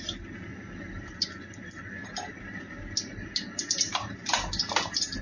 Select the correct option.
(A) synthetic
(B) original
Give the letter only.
B